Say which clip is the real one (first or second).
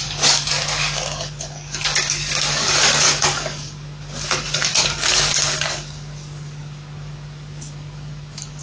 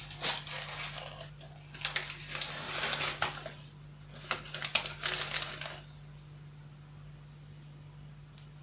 second